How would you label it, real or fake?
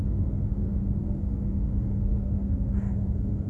fake